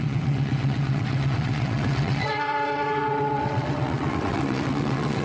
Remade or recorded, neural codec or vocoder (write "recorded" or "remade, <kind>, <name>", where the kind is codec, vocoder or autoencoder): remade, vocoder, WaveNeXt